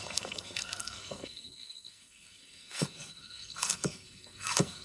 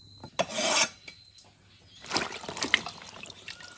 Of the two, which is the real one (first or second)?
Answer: second